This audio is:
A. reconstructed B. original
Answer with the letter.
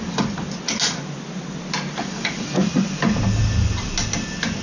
B